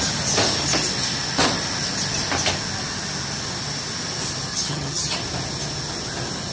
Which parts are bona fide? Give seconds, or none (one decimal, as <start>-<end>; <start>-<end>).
0.0-4.5; 5.2-6.5